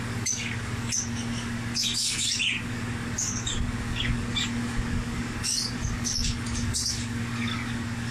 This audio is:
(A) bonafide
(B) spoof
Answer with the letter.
B